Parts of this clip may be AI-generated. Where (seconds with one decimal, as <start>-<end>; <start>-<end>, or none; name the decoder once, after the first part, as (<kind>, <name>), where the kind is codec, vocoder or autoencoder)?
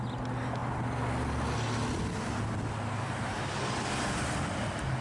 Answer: none